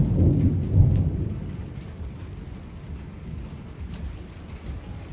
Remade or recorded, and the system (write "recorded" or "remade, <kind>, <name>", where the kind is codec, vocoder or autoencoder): recorded